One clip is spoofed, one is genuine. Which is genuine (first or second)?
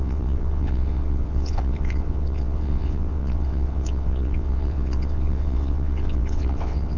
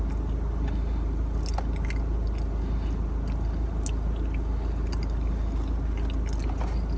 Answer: second